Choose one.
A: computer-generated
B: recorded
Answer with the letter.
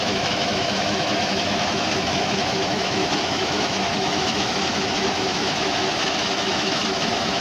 A